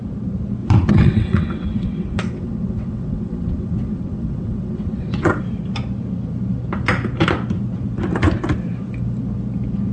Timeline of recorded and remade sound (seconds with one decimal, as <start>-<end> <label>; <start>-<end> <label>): 0.0-0.6 recorded; 0.6-5.4 remade; 5.4-9.9 recorded